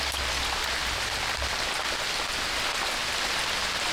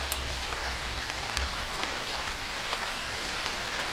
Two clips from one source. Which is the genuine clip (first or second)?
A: first